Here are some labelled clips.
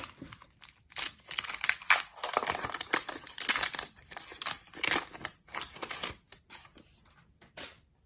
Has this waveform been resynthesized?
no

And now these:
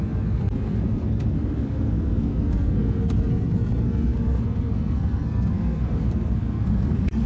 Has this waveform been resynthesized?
yes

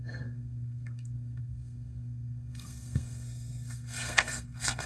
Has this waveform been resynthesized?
yes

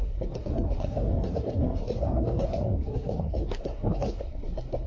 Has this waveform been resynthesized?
yes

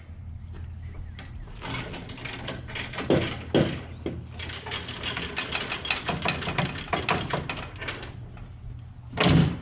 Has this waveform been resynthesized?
no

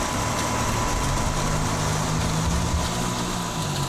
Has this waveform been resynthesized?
no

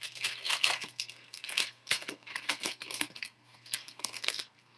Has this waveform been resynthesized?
yes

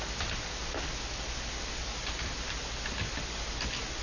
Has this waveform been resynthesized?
no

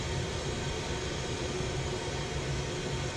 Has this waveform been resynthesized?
no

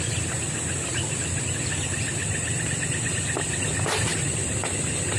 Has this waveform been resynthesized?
no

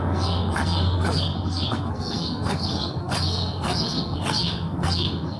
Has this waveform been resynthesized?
yes